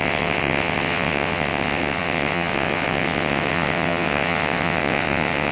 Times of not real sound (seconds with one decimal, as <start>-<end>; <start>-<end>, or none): 0.0-5.5